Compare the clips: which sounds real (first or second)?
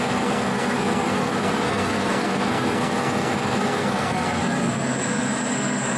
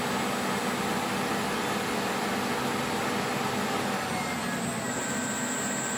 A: second